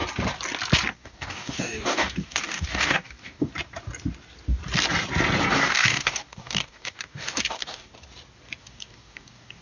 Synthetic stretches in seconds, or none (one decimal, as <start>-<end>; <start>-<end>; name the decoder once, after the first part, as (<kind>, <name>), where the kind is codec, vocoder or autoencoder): 0.9-3.5 (codec, DAC); 5.6-7.9; 8.6-9.6